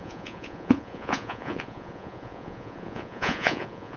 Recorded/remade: remade